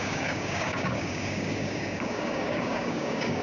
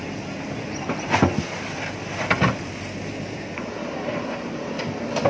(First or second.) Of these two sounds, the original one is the second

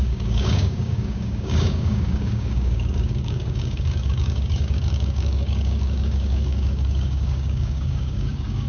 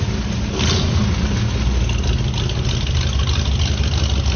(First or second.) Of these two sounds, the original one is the second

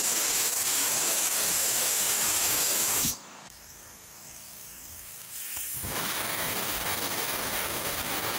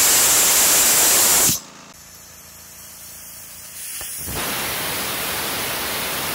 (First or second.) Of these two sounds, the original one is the second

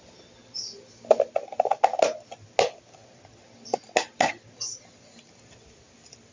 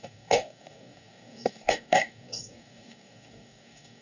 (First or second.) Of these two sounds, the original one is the first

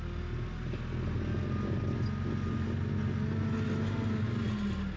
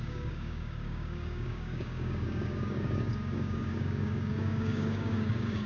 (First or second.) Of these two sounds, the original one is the first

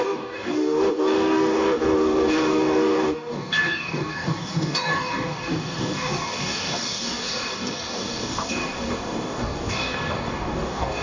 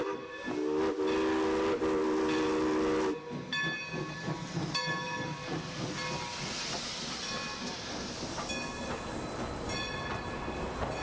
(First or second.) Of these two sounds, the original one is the second